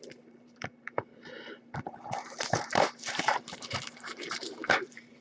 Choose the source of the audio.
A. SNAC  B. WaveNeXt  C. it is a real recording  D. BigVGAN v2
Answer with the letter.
D